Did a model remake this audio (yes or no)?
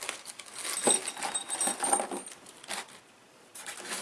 no